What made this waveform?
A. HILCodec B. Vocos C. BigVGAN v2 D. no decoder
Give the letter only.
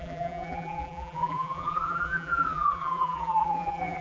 C